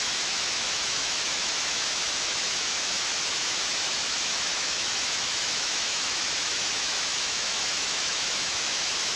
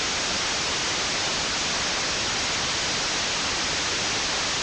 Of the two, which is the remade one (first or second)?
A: first